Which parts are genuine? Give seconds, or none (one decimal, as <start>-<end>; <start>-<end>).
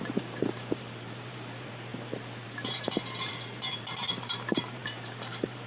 none